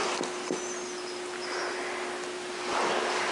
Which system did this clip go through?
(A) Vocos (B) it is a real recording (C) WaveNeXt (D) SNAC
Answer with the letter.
B